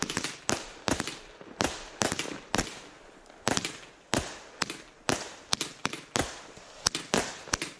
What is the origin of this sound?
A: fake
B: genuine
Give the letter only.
B